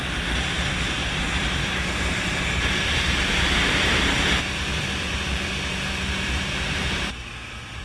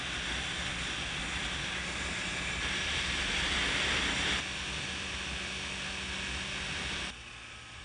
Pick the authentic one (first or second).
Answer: second